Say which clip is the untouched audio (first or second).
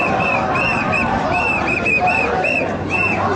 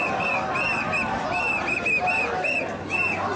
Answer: second